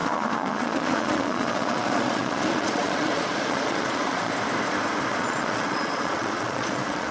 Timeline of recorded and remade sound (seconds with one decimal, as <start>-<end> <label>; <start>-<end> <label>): 0.0-4.3 remade; 4.3-5.1 recorded; 5.1-7.1 remade